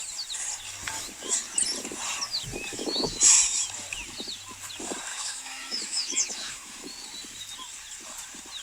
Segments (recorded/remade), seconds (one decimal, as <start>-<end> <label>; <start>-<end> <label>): 0.0-2.7 recorded; 2.7-3.2 remade; 3.2-5.1 recorded; 5.1-6.9 remade; 6.9-8.6 recorded